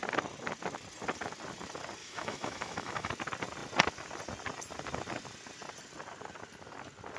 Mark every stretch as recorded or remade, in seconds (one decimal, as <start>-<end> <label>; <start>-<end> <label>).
0.0-2.0 recorded; 2.0-3.1 remade; 3.1-7.2 recorded